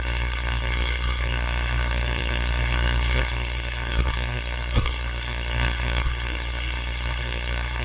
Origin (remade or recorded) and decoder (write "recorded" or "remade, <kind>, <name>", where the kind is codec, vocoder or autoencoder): remade, codec, SNAC